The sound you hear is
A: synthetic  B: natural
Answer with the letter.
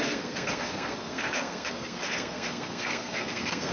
A